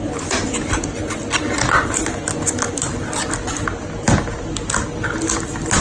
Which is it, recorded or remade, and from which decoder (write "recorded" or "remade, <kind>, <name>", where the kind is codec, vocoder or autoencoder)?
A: recorded